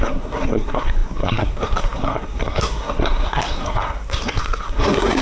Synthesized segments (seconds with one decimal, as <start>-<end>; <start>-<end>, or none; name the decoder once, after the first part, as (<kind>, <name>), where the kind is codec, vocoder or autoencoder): 0.0-5.2 (codec, SNAC)